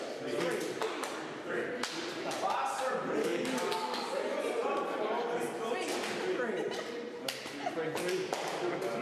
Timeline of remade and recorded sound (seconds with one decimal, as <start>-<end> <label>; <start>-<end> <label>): 0.0-3.2 recorded; 3.2-4.1 remade; 4.1-9.0 recorded